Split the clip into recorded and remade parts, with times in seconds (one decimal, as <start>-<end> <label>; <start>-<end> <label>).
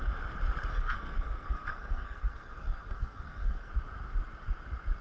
0.0-0.7 recorded; 0.7-3.7 remade; 3.7-5.0 recorded